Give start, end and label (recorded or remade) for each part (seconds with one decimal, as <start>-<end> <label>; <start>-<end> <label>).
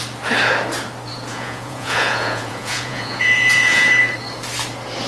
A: 0.0-1.3 recorded; 1.3-3.9 remade; 3.9-5.1 recorded